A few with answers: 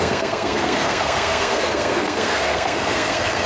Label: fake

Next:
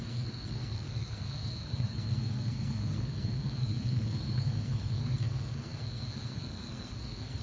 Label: fake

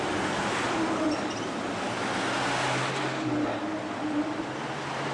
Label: real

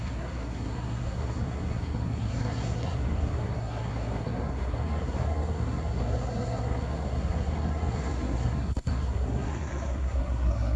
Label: fake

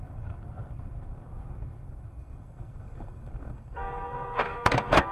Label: fake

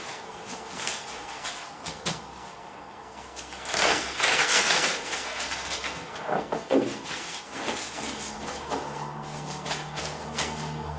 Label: fake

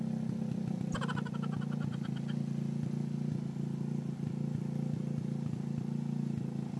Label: real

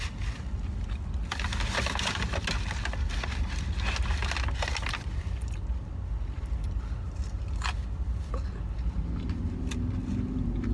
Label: real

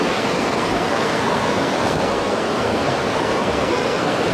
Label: fake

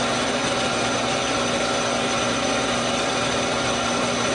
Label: real